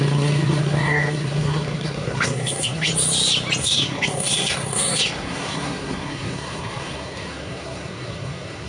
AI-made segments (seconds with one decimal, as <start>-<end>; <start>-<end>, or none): 0.0-2.9; 3.6-8.7